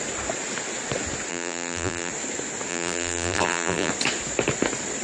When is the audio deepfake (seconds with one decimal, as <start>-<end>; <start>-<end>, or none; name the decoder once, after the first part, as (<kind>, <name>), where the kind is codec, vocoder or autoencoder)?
1.3-2.1 (vocoder, BigVGAN v2); 2.7-3.9